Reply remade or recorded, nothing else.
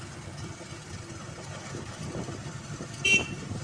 remade